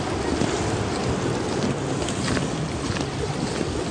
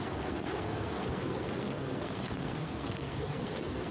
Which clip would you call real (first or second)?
first